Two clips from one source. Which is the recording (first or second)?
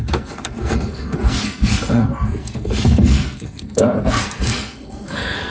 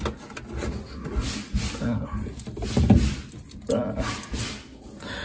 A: second